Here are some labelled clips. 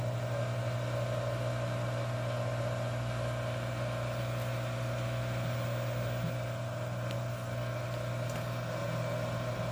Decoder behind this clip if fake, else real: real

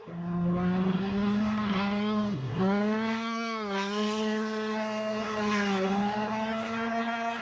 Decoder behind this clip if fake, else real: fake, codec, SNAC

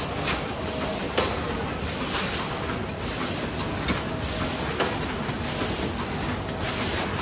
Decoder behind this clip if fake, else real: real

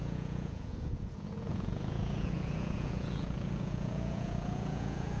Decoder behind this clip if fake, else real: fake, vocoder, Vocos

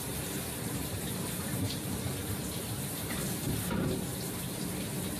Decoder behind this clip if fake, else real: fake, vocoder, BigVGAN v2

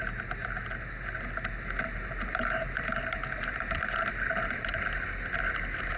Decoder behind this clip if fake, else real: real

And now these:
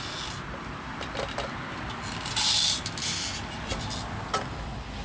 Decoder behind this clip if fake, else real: real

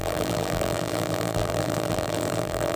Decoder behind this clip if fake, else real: fake, vocoder, BigVGAN v2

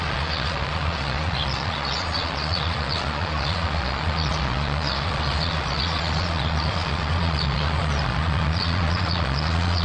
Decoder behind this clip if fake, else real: fake, vocoder, Vocos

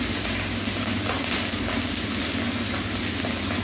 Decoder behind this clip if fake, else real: real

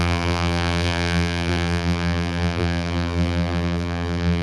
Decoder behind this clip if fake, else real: fake, vocoder, BigVGAN v2